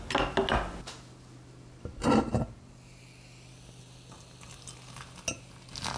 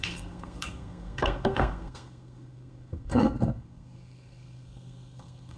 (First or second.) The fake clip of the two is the second